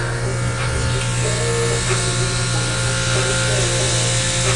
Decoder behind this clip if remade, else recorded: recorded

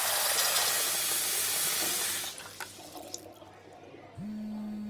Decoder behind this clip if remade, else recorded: recorded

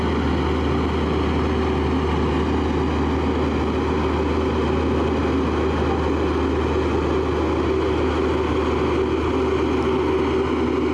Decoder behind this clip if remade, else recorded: recorded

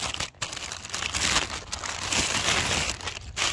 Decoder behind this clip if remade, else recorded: recorded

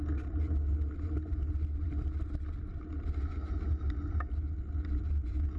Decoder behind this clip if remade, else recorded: recorded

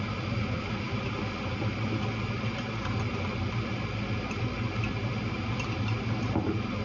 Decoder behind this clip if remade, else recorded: recorded